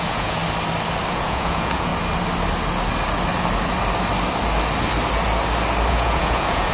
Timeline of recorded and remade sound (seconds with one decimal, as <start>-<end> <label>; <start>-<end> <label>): 0.0-0.4 remade; 0.4-1.1 recorded; 1.1-1.9 remade; 1.9-5.9 recorded; 5.9-6.7 remade